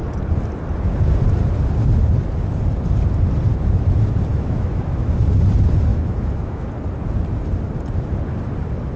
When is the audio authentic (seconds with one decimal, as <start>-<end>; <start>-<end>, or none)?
0.0-4.3; 5.2-5.9; 6.7-9.0